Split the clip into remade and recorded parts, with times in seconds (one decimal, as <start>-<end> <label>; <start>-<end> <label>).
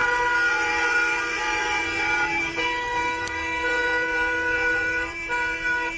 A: 0.0-0.5 recorded; 0.5-6.0 remade